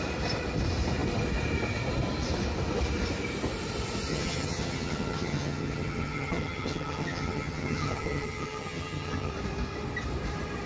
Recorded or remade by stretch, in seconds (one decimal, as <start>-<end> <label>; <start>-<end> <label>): 0.0-4.1 recorded; 4.1-9.3 remade; 9.3-10.7 recorded